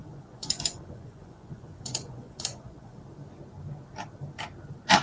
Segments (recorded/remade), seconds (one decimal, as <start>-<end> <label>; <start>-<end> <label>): 0.0-3.0 remade; 3.0-5.0 recorded